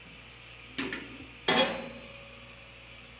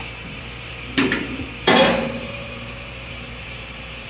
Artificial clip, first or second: second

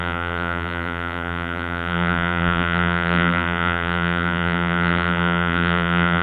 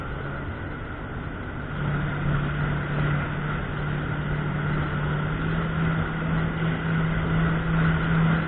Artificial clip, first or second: first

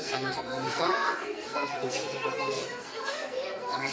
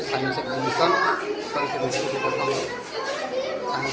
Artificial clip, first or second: first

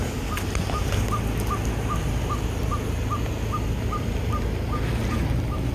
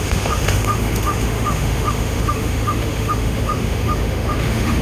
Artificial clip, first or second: second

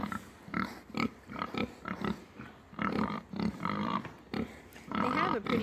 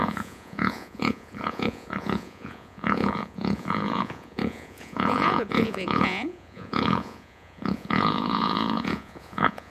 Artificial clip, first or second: second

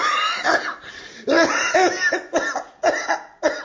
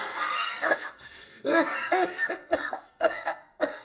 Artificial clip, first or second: second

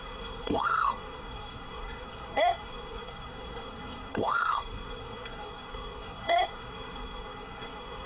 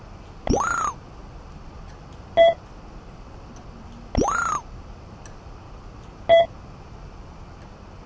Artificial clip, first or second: first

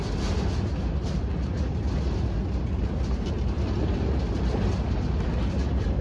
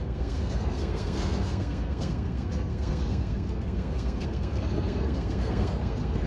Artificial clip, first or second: second